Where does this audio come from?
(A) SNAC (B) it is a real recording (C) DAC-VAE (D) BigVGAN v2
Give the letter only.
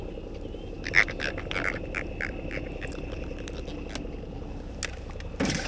B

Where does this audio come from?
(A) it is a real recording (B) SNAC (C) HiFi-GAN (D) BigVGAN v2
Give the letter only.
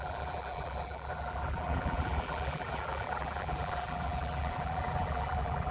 D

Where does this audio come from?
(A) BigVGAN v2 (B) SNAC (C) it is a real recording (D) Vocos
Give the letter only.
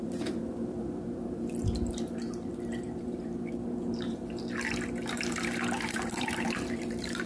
A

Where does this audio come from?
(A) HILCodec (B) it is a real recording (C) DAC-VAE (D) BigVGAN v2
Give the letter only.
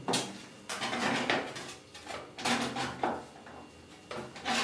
B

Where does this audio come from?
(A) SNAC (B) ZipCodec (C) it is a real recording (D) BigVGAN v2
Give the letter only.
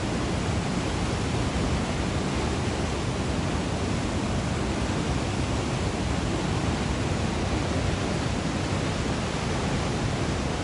C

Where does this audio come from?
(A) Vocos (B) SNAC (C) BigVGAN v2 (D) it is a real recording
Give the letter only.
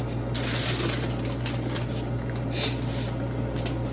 D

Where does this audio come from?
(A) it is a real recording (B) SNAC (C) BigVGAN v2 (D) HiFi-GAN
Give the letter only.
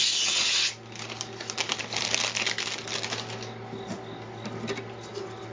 A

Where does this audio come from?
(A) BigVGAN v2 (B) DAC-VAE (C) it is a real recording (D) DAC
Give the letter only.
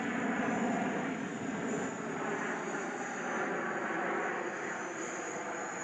C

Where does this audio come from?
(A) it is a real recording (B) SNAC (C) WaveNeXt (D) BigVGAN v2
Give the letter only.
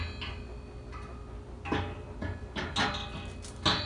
A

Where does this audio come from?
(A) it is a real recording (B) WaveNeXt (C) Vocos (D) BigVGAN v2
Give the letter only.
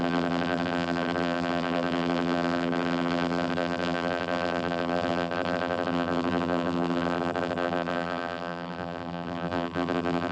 D